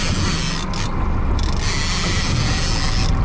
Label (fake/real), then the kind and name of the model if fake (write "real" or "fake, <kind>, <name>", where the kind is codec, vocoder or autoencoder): real